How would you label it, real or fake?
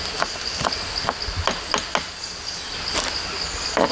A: real